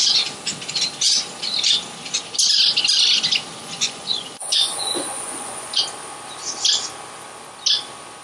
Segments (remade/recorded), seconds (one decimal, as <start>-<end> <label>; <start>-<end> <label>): 0.0-3.6 recorded; 3.6-5.8 remade; 5.8-8.2 recorded